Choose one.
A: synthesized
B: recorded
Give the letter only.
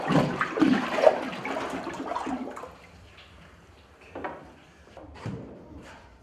B